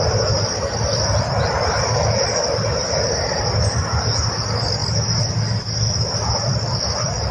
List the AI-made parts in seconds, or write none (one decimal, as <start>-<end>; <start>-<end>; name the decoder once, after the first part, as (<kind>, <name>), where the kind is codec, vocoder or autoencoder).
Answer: none